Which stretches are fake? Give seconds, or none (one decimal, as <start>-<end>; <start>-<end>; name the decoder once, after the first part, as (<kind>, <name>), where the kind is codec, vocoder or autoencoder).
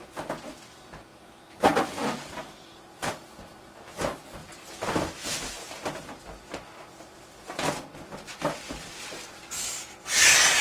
4.4-7.1 (vocoder, BigVGAN v2)